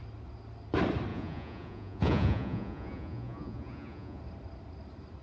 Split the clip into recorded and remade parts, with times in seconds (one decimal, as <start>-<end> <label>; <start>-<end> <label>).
0.0-1.1 recorded; 1.1-4.2 remade; 4.2-5.2 recorded